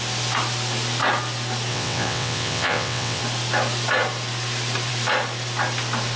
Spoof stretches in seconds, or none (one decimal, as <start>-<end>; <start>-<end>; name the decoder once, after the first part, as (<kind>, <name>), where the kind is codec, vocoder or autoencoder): 1.7-3.2 (vocoder, WaveNeXt)